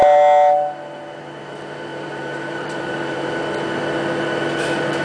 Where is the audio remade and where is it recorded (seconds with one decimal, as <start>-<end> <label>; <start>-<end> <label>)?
0.0-1.9 recorded; 1.9-3.3 remade; 3.3-5.0 recorded